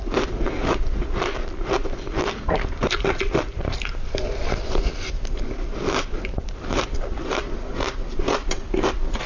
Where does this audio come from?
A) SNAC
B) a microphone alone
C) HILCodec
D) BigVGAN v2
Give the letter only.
D